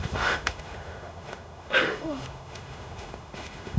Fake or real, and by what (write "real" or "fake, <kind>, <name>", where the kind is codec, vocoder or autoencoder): fake, autoencoder, DAC-VAE